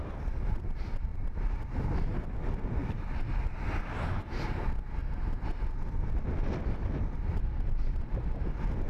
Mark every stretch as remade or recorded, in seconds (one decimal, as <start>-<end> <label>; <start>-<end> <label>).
0.0-1.1 recorded; 1.1-2.2 remade; 2.2-7.3 recorded; 7.3-8.1 remade; 8.1-8.9 recorded